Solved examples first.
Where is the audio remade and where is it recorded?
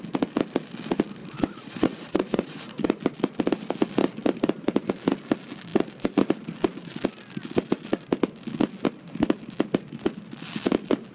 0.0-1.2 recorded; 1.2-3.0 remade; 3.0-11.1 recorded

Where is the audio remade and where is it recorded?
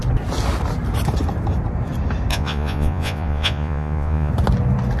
0.0-2.3 recorded; 2.3-4.3 remade; 4.3-5.0 recorded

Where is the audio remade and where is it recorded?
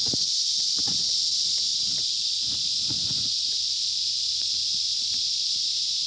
0.0-0.6 recorded; 0.6-4.6 remade; 4.6-6.1 recorded